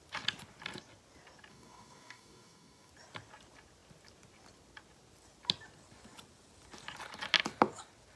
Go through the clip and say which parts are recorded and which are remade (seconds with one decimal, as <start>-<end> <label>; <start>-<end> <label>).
0.0-1.5 recorded; 1.5-2.9 remade; 2.9-8.2 recorded